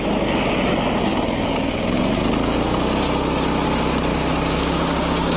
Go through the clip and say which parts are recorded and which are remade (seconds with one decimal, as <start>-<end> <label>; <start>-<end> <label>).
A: 0.0-1.1 recorded; 1.1-2.0 remade; 2.0-4.1 recorded; 4.1-5.4 remade